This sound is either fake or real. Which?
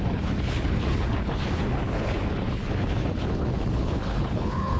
fake